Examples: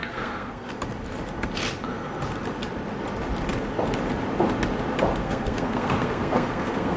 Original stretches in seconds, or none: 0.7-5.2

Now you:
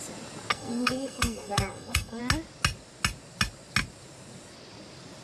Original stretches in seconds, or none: 0.0-0.5; 2.2-5.2

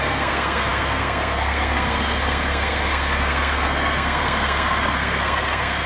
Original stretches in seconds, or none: none

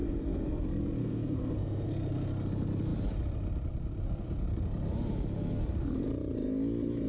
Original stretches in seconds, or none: 0.6-1.0; 1.9-7.1

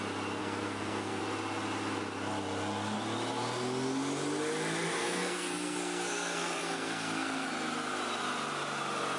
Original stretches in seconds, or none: 0.0-0.4; 1.2-5.0; 7.5-9.2

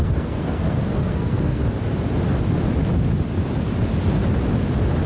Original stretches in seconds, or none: 1.6-5.1